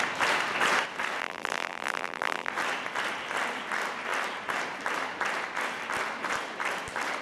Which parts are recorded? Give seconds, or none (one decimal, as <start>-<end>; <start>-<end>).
0.0-1.2; 2.5-7.2